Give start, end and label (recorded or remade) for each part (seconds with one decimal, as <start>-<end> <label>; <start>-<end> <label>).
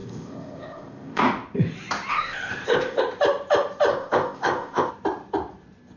0.0-1.2 remade; 1.2-2.1 recorded; 2.1-3.0 remade; 3.0-3.9 recorded; 3.9-4.9 remade; 4.9-6.0 recorded